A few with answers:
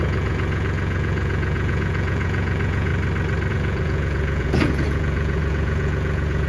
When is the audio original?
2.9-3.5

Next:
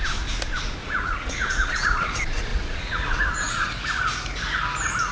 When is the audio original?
0.0-0.8; 2.1-2.5; 3.7-5.1

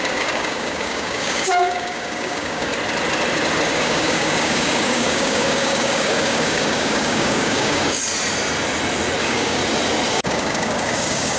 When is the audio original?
2.7-3.7; 8.0-9.2; 9.6-10.1